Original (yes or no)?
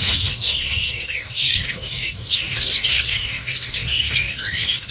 no